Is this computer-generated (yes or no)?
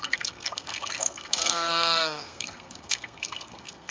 yes